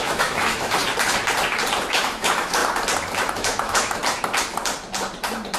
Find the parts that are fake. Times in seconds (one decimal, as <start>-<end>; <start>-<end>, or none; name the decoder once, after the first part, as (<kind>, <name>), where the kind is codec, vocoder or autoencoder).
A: 0.0-0.8 (autoencoder, DAC-VAE); 1.9-2.6; 3.3-4.0